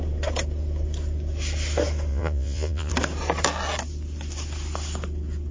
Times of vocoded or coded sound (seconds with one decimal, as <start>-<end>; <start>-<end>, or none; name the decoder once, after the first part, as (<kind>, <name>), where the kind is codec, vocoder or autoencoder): 2.1-2.9 (vocoder, Vocos)